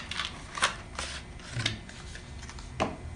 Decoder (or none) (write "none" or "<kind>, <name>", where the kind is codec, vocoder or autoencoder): none